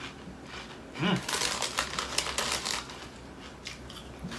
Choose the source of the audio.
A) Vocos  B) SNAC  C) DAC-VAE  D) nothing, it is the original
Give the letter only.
D